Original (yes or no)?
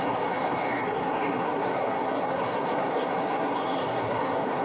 no